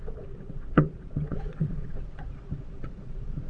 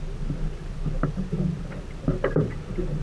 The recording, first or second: second